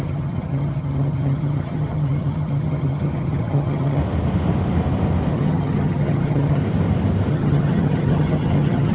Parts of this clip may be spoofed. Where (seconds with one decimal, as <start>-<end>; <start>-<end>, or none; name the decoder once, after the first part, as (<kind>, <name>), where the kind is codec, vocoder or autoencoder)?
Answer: 0.0-4.0 (vocoder, HiFi-GAN); 5.3-6.6; 7.3-8.9